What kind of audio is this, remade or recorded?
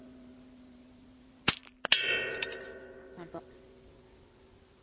recorded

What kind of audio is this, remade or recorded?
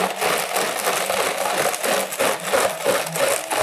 recorded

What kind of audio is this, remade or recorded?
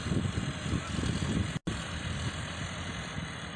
recorded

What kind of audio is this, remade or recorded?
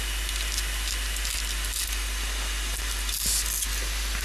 recorded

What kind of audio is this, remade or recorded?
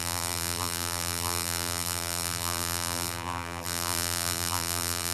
remade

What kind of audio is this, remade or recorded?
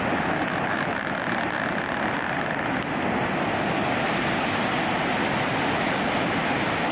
recorded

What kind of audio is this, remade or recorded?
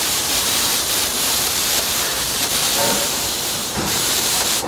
remade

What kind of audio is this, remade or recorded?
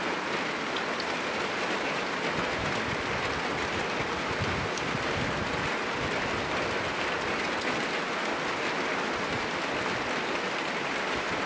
recorded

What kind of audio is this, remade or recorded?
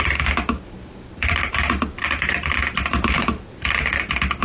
remade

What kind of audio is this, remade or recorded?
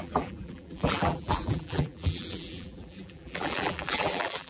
remade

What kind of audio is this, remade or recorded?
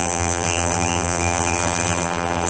remade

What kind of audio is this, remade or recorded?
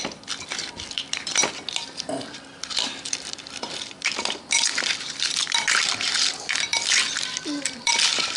remade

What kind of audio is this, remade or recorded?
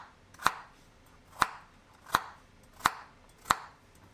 recorded